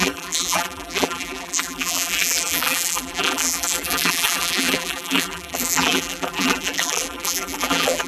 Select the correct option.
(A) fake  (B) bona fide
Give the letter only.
A